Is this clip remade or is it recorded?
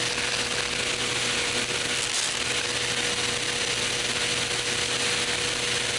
recorded